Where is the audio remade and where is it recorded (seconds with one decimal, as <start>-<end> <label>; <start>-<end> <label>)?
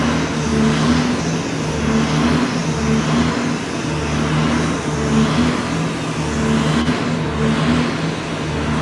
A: 0.0-8.8 recorded